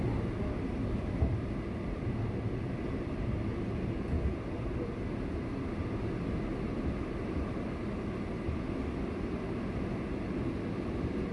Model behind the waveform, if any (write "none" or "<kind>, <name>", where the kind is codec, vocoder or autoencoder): none